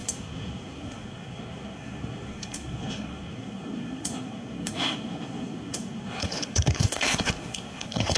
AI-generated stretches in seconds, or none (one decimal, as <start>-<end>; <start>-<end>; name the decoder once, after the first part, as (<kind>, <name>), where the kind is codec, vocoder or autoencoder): 0.0-8.2 (codec, SNAC)